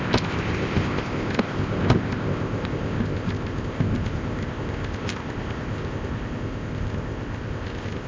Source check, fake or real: fake